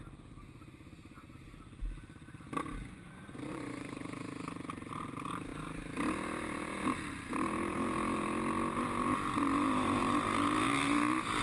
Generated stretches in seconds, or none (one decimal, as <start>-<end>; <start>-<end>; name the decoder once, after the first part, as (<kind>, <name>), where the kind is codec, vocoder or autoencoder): 2.8-3.9 (vocoder, Vocos)